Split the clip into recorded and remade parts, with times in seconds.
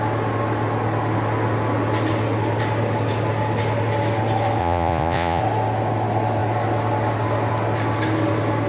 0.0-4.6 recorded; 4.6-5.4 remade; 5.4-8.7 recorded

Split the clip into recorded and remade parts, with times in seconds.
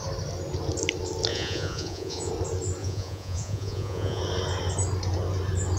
0.0-1.3 recorded; 1.3-2.3 remade; 2.3-2.8 recorded; 2.8-4.2 remade; 4.2-5.8 recorded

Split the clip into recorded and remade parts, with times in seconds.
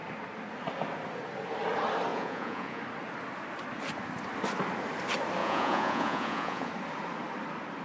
0.0-2.1 recorded; 2.1-2.8 remade; 2.8-5.4 recorded; 5.4-6.7 remade; 6.7-7.8 recorded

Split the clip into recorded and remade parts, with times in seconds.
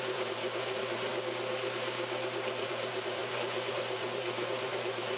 0.0-1.1 remade; 1.1-2.6 recorded; 2.6-5.2 remade